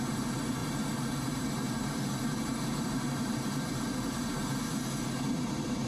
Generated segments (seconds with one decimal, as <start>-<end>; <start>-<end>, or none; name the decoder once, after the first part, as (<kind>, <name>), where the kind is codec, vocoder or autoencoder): 0.0-4.4 (vocoder, BigVGAN v2); 5.3-5.9